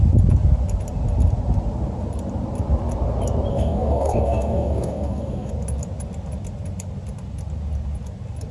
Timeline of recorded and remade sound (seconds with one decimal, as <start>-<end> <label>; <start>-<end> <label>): 0.0-3.5 recorded; 3.5-5.5 remade; 5.5-8.5 recorded